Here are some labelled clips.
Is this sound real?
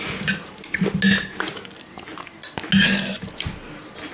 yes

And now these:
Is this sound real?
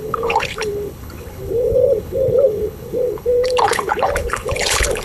no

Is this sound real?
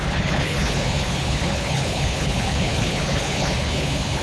no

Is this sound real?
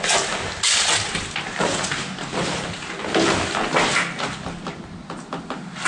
yes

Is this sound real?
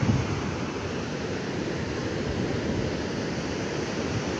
yes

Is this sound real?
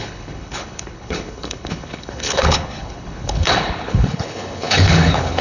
no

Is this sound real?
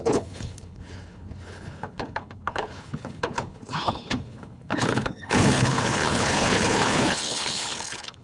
no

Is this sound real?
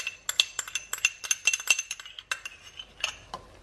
yes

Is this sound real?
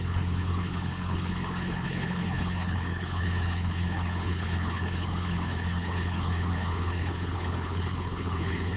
no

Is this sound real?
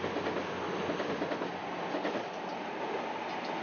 yes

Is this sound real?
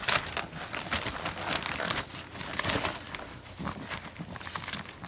yes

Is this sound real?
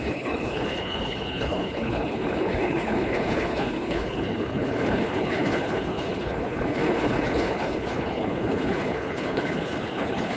no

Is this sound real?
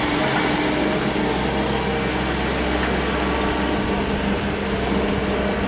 yes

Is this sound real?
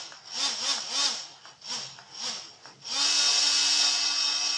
yes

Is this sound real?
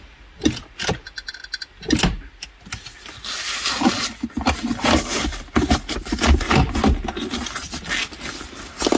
yes